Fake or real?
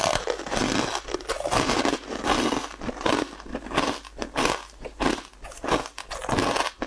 real